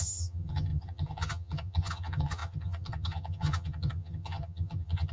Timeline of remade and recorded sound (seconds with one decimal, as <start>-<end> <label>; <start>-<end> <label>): 0.0-5.1 remade